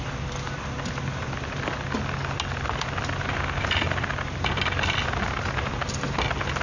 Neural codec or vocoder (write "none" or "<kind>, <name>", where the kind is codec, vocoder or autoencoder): none